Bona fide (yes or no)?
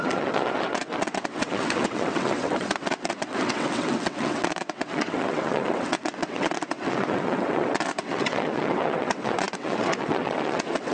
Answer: no